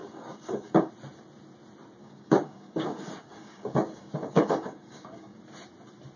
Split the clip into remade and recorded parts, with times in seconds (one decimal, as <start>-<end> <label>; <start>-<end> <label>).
0.0-0.9 remade; 0.9-2.0 recorded; 2.0-5.4 remade; 5.4-6.2 recorded